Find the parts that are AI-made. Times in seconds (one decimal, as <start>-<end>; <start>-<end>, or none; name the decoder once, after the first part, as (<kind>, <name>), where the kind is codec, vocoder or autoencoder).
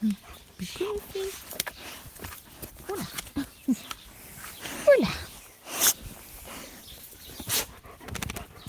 6.6-7.9 (vocoder, BigVGAN v2)